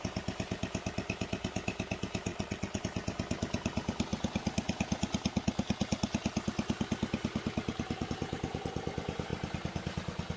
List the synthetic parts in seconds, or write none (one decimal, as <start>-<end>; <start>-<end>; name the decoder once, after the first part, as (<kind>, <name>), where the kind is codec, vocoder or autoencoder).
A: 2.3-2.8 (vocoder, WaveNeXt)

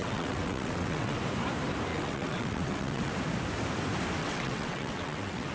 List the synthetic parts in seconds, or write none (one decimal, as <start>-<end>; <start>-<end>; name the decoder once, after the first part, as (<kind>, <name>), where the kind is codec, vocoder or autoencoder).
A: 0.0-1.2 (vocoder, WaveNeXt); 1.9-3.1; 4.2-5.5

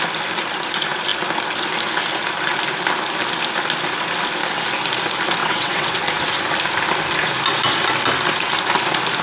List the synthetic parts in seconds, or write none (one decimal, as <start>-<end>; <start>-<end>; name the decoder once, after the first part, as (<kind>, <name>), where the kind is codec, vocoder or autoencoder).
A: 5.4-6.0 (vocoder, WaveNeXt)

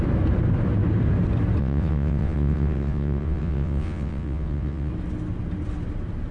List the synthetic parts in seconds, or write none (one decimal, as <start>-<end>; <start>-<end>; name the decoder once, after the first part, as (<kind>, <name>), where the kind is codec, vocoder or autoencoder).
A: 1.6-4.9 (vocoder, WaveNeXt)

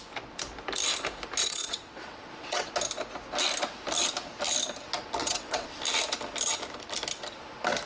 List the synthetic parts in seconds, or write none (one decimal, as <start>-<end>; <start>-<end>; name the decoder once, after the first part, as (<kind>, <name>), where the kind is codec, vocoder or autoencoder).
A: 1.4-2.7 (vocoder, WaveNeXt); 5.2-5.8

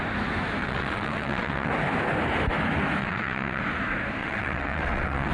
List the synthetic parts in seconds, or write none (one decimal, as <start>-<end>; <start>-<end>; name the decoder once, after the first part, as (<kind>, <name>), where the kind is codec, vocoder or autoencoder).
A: 0.6-1.7 (vocoder, WaveNeXt); 3.0-3.6; 4.2-5.3

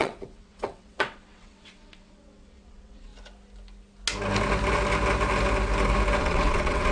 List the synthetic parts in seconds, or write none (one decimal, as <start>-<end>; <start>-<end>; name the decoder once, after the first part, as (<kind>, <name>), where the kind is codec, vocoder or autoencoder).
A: 0.0-3.1 (vocoder, WaveNeXt); 6.2-6.9